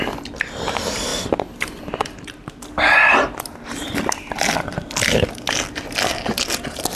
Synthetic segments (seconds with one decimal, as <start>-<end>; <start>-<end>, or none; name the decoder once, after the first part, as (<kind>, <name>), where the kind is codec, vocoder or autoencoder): none